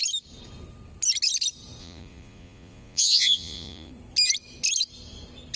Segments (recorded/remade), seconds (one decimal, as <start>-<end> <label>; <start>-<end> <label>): 0.0-1.8 recorded; 1.8-3.9 remade; 3.9-5.6 recorded